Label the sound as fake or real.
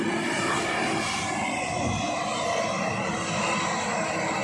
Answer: real